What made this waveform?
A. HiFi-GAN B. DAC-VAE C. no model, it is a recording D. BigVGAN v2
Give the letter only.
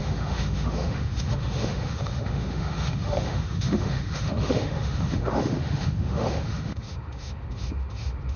B